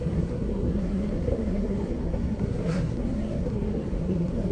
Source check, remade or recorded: remade